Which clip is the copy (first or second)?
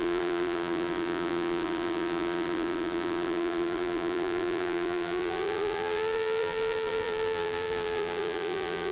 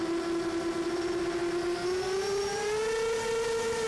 first